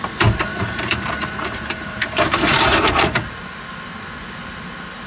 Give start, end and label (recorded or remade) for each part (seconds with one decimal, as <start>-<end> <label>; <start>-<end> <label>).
0.0-0.5 recorded; 0.5-3.6 remade; 3.6-5.1 recorded